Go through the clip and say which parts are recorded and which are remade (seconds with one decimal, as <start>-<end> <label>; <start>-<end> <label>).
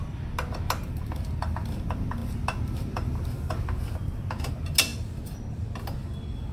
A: 0.0-6.5 recorded